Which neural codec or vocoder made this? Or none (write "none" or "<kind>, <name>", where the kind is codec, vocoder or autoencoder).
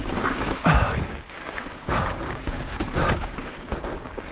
codec, DAC